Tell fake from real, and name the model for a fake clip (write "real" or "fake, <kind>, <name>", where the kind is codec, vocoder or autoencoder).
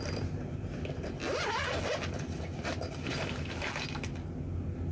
real